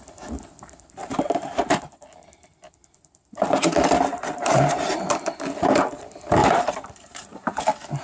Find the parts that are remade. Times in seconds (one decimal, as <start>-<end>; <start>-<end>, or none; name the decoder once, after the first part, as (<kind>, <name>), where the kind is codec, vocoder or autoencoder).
1.0-1.8 (vocoder, BigVGAN v2); 4.1-5.0; 6.4-7.6